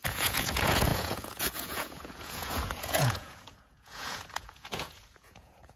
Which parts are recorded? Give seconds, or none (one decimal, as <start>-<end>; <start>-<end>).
none